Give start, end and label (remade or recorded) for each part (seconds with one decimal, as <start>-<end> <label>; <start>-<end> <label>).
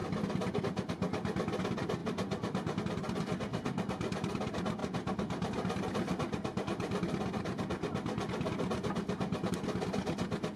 0.0-2.0 recorded; 2.0-2.8 remade; 2.8-4.8 recorded; 4.8-9.5 remade; 9.5-10.6 recorded